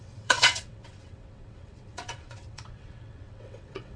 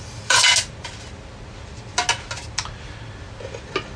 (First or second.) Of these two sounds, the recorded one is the second